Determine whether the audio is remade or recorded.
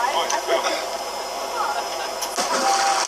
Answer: recorded